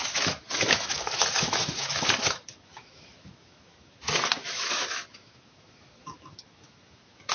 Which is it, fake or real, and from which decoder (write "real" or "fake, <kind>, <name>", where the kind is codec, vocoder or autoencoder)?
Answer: fake, autoencoder, DAC-VAE